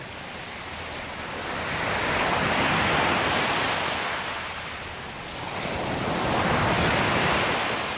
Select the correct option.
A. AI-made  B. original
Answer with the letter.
B